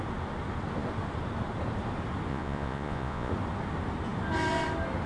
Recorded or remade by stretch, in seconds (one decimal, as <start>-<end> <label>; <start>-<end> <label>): 0.0-2.3 recorded; 2.3-3.3 remade; 3.3-5.1 recorded